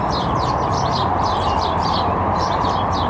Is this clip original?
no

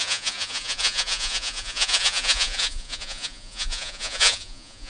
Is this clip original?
no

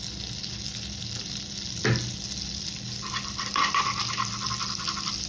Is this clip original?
yes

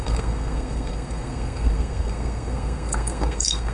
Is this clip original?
no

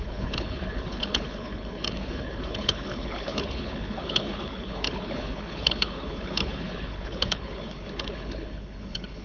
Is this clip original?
no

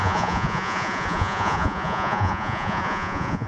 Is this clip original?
no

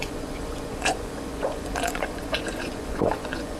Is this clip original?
no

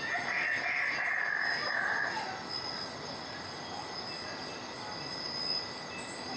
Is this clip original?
yes